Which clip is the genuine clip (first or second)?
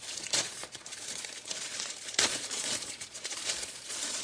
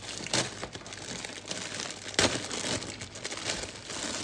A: second